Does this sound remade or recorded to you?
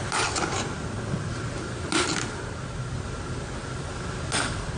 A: recorded